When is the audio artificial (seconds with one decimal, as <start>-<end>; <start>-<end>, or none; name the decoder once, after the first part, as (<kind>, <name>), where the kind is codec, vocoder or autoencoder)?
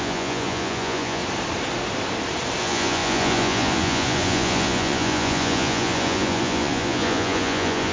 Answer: 0.0-1.2 (vocoder, Vocos); 2.6-7.9